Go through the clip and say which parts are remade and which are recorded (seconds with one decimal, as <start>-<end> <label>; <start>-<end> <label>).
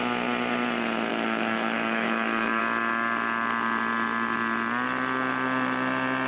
0.0-1.1 recorded; 1.1-2.6 remade; 2.6-6.3 recorded